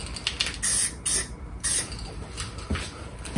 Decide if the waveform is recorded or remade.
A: recorded